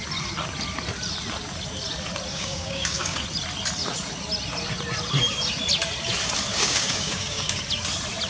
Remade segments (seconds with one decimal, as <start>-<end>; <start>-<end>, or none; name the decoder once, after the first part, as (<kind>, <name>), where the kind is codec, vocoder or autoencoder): 2.3-3.2 (codec, DAC); 6.5-7.6